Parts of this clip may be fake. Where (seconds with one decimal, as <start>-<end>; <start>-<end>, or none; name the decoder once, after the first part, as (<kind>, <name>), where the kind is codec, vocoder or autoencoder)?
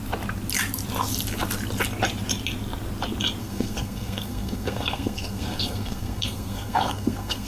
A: 3.4-7.5 (codec, SNAC)